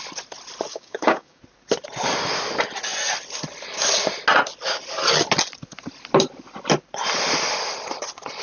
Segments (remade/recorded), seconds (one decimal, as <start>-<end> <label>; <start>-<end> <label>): 0.0-0.7 recorded; 0.7-1.4 remade; 1.4-8.4 recorded